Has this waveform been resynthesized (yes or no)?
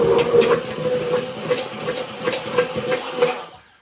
no